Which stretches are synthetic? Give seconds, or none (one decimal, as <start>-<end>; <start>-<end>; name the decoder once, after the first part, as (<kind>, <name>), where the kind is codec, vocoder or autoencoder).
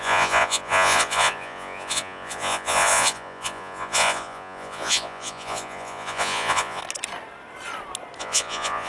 0.0-6.8 (vocoder, Vocos); 8.2-8.9